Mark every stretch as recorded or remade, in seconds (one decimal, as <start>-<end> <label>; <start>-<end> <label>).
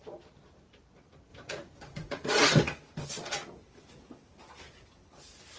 0.0-1.3 recorded; 1.3-2.3 remade; 2.3-5.6 recorded